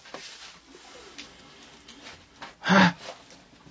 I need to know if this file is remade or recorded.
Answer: recorded